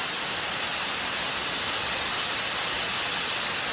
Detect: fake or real real